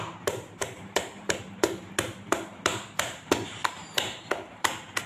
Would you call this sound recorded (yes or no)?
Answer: no